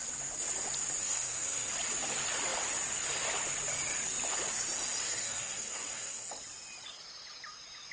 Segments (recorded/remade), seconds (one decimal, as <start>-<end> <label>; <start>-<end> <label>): 0.0-1.0 recorded; 1.0-1.7 remade; 1.7-5.0 recorded; 5.0-6.3 remade; 6.3-7.9 recorded